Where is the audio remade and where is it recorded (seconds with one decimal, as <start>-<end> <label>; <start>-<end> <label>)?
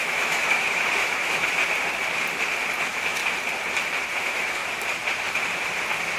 0.0-1.6 remade; 1.6-2.8 recorded; 2.8-3.2 remade; 3.2-4.1 recorded; 4.1-4.6 remade; 4.6-6.2 recorded